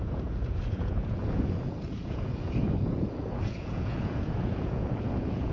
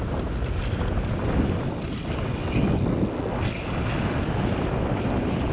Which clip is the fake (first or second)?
first